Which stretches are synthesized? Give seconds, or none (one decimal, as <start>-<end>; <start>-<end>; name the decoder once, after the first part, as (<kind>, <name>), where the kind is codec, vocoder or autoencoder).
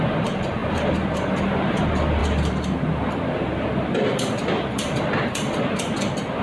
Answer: 0.6-1.8 (vocoder, BigVGAN v2)